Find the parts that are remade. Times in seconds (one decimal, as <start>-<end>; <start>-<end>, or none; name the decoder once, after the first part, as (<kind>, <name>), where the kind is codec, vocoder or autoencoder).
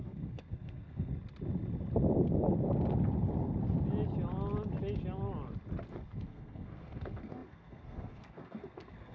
0.0-1.1 (codec, SNAC); 5.9-9.1